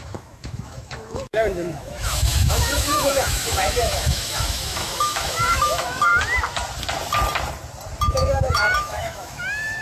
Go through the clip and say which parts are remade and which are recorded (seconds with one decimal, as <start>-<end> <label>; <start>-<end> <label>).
0.0-6.1 remade; 6.1-8.1 recorded; 8.1-9.8 remade